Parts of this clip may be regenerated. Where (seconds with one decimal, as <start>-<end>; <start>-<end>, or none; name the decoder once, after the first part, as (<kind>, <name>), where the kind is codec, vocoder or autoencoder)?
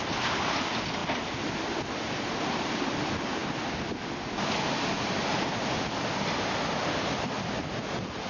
none